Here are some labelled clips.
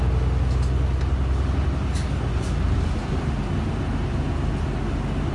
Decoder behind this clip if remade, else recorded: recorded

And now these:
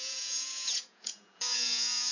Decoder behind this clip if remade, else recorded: remade, vocoder, Vocos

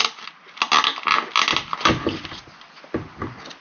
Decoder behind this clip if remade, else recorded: recorded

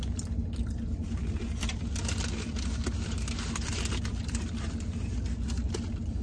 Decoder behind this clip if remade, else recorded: recorded